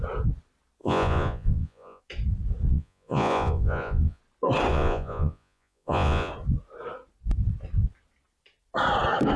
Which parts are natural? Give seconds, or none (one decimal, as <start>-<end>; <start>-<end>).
0.0-0.8; 2.0-2.7; 4.2-4.7; 6.3-9.4